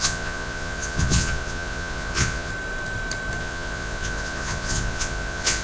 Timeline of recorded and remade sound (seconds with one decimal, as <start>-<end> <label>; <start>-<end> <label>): 0.0-2.5 remade; 2.5-3.4 recorded; 3.4-5.6 remade